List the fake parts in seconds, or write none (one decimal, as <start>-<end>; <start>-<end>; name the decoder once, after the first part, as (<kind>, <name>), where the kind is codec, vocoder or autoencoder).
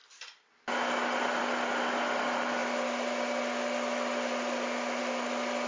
none